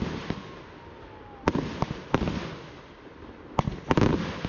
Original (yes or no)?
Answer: yes